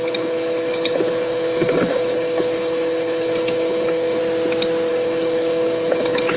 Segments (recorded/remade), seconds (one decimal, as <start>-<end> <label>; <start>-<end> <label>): 0.0-4.2 remade; 4.2-4.9 recorded; 4.9-6.4 remade